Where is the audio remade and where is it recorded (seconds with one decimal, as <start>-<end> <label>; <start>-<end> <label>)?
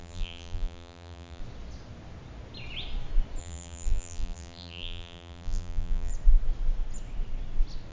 0.0-1.4 remade; 1.4-3.4 recorded; 3.4-6.1 remade; 6.1-7.9 recorded